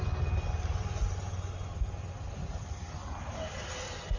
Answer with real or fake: real